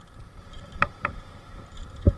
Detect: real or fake fake